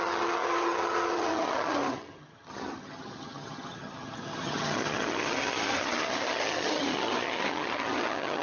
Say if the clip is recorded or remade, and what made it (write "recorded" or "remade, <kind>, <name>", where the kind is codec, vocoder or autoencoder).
remade, vocoder, HiFi-GAN